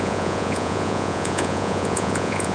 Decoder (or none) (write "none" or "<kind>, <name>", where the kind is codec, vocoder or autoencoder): vocoder, Vocos